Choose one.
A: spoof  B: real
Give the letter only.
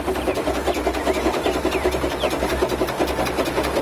B